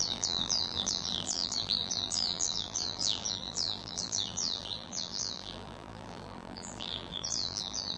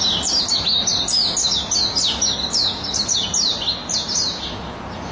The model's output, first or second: first